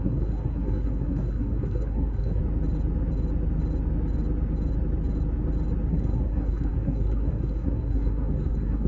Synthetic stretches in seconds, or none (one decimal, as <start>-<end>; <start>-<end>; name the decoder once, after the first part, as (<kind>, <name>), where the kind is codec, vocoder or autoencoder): 0.0-2.4 (codec, SNAC); 5.9-8.9